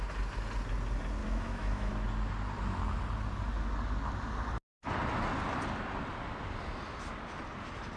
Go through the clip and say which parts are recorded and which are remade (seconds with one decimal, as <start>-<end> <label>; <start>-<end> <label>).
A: 0.0-1.2 recorded; 1.2-1.9 remade; 1.9-8.0 recorded